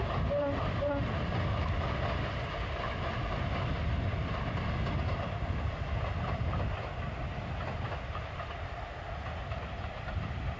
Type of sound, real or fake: real